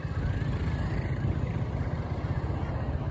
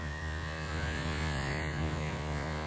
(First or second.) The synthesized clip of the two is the second